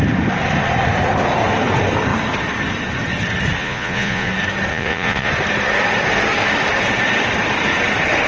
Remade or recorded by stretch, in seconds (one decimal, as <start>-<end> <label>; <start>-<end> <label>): 0.0-3.6 recorded; 3.6-4.3 remade; 4.3-4.7 recorded; 4.7-5.3 remade; 5.3-8.3 recorded